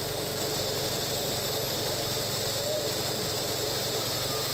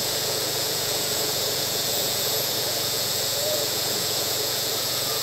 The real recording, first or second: first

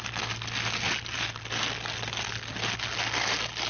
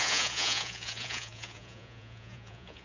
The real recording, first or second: first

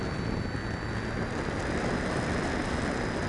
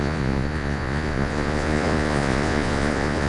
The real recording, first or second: first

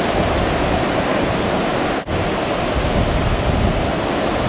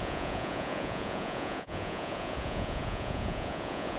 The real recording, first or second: first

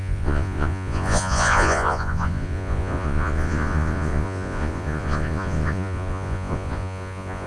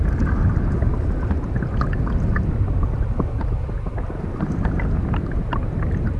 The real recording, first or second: second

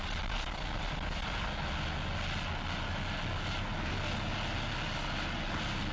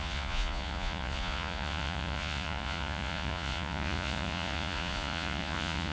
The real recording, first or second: first